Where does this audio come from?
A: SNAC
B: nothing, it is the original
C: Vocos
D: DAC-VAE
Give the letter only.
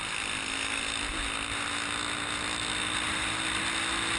B